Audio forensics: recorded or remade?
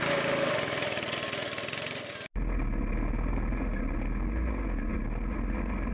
recorded